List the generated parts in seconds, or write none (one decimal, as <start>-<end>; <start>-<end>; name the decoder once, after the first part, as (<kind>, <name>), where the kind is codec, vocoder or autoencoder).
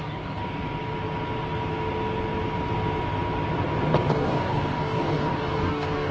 0.0-0.4 (codec, DAC); 4.1-6.1